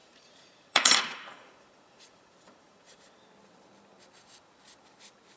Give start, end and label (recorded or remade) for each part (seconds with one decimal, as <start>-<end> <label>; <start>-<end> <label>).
0.0-3.2 remade; 3.2-5.4 recorded